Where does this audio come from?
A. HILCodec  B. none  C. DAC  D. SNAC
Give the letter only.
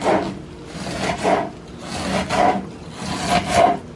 B